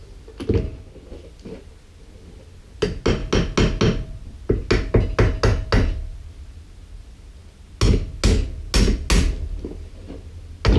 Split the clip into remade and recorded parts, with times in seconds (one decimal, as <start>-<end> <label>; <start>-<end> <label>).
0.0-10.8 recorded